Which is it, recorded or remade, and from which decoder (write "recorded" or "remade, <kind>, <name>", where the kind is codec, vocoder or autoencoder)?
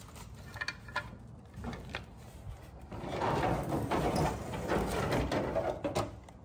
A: recorded